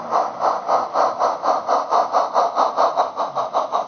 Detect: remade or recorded recorded